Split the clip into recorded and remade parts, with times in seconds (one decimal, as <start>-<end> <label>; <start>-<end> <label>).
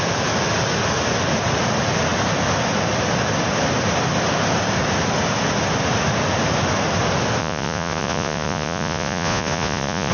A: 0.0-7.4 recorded; 7.4-10.1 remade